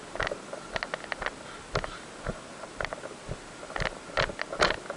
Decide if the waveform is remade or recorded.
recorded